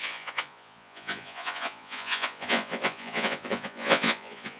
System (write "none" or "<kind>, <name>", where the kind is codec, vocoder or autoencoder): vocoder, Vocos